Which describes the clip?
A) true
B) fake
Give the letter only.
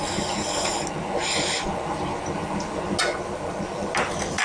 A